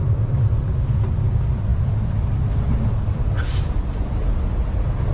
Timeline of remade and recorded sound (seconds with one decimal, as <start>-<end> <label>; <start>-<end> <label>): 0.0-5.1 recorded